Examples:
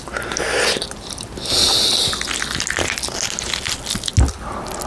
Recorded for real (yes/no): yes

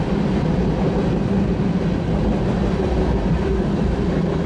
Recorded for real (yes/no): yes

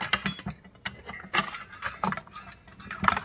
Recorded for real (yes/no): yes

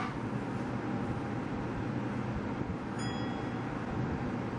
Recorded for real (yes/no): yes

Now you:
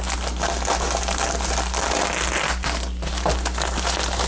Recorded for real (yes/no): yes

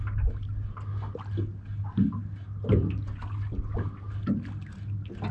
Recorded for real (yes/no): yes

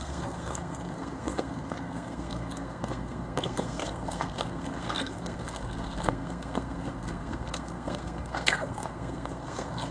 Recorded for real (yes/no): no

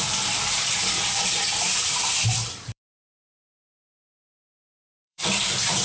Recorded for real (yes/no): no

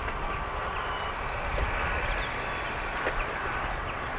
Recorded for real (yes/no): yes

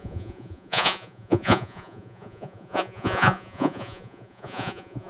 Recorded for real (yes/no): no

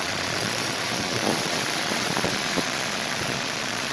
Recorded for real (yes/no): no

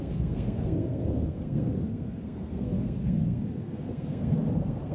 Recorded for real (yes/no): no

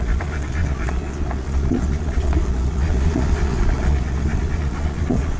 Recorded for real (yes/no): no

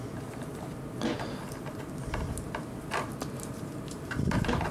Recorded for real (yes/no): no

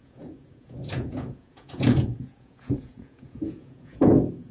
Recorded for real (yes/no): no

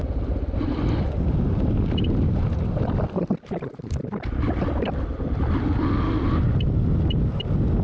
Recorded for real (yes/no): yes